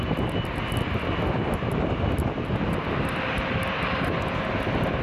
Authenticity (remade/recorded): recorded